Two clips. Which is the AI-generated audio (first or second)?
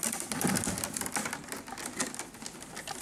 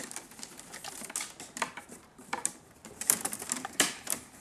second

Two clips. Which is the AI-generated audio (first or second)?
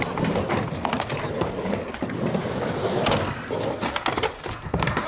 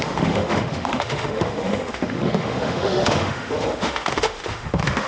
second